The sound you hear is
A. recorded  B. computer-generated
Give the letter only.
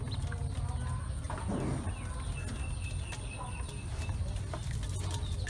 A